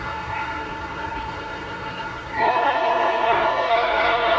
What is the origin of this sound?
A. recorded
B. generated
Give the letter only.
B